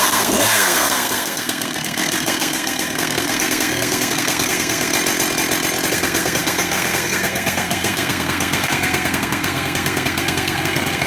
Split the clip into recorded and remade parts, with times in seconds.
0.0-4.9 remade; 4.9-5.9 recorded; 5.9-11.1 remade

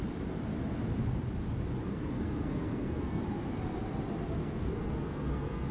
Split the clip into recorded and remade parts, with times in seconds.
0.0-1.9 recorded; 1.9-3.2 remade; 3.2-4.4 recorded; 4.4-5.7 remade

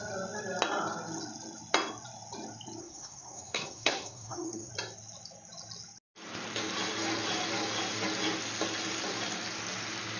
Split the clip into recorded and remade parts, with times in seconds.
0.0-2.8 recorded; 2.8-4.7 remade; 4.7-10.2 recorded